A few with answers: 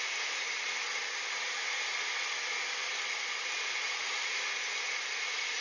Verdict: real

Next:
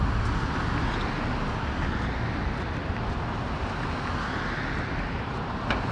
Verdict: real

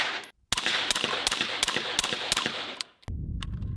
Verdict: real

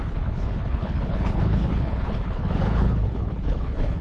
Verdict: fake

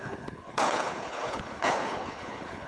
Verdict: fake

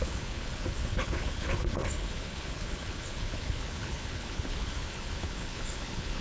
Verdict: fake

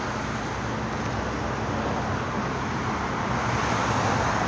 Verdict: real